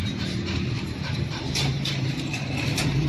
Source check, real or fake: fake